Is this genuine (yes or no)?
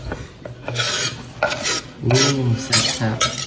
yes